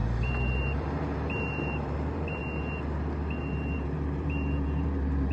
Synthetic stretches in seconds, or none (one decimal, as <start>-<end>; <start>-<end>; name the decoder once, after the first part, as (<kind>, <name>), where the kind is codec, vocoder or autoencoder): 0.0-2.4 (vocoder, BigVGAN v2); 3.4-5.3